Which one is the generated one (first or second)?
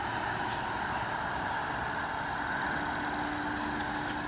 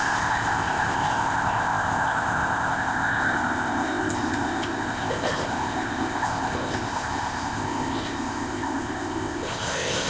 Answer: second